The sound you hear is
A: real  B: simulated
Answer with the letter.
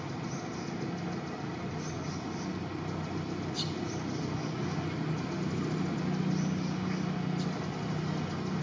A